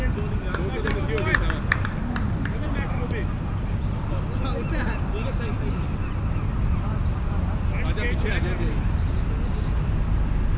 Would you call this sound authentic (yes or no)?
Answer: yes